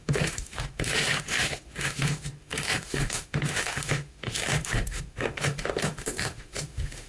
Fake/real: fake